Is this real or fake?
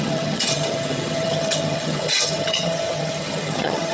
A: fake